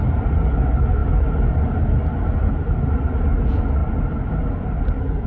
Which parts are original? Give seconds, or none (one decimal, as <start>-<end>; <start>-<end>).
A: 0.0-5.3